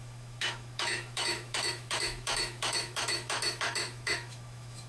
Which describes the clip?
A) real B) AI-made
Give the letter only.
B